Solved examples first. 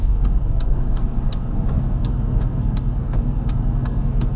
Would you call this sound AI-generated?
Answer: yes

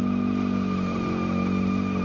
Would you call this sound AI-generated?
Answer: no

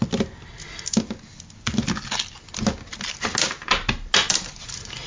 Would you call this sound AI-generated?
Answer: no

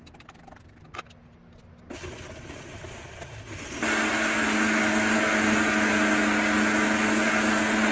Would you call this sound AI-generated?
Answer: no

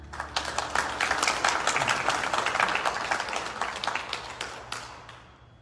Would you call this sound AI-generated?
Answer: no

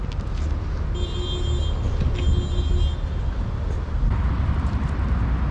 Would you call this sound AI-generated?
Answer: no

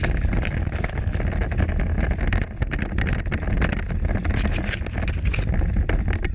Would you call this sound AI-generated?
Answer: no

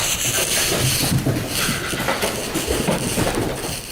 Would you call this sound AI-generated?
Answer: no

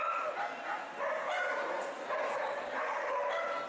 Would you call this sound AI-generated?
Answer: no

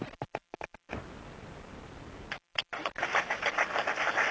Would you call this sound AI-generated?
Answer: no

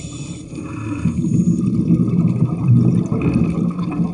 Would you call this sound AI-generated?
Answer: no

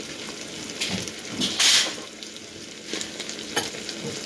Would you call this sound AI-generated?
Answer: no